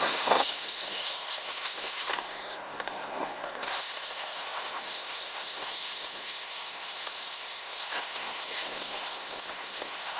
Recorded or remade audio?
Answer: remade